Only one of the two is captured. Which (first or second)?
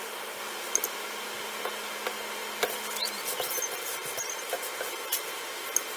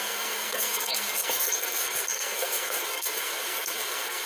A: first